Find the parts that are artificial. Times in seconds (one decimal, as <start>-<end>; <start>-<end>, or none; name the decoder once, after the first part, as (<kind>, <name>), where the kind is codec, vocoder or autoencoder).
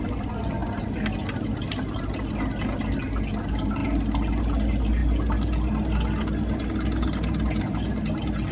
none